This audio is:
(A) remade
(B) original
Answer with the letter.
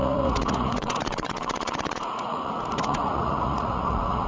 A